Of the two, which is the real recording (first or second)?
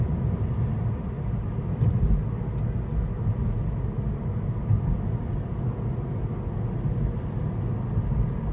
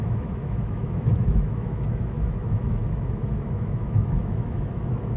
first